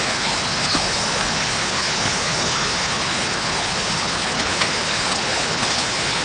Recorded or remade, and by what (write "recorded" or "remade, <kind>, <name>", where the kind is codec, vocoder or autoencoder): remade, codec, HILCodec